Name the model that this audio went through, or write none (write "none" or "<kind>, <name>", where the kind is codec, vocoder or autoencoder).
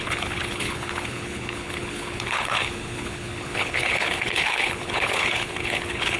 codec, HILCodec